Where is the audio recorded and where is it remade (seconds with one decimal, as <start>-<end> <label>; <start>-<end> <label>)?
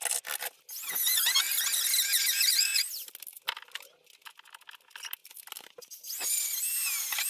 0.0-7.3 recorded